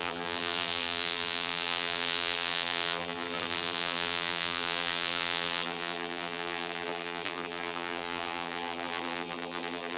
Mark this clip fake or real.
fake